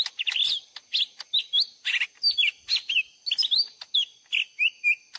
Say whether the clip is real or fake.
real